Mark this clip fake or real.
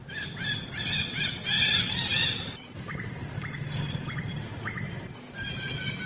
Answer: real